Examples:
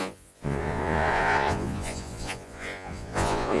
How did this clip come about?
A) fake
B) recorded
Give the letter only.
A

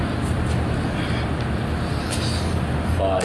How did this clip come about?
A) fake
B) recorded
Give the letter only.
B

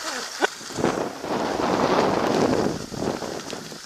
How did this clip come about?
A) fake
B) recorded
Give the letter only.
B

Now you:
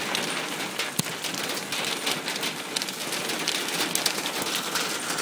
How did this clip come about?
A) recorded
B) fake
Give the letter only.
A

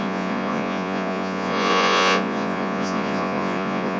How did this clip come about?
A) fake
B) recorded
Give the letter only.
A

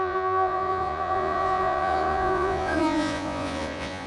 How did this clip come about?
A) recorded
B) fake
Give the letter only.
B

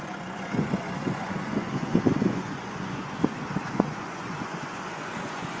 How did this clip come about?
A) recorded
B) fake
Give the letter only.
B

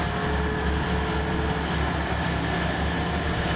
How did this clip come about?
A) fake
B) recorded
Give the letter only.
B